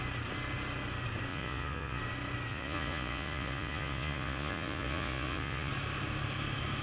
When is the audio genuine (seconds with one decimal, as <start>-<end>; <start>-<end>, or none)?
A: 0.0-1.3; 2.0-2.5; 5.7-6.8